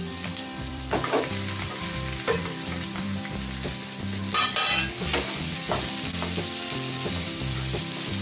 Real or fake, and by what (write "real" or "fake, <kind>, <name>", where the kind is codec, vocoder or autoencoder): fake, vocoder, BigVGAN v2